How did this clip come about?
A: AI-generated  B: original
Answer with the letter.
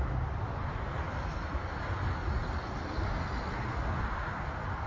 B